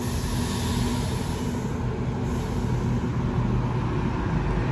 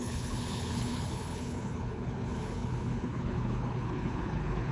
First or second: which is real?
first